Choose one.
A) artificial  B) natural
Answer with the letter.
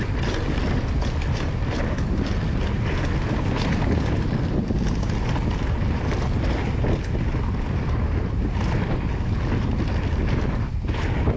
B